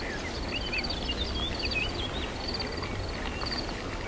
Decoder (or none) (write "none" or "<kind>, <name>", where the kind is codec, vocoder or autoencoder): none